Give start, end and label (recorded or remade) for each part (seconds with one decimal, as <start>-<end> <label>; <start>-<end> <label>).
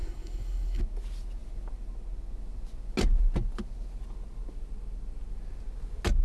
0.0-0.8 remade; 0.8-6.2 recorded